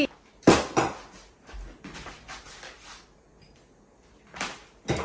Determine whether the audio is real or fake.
real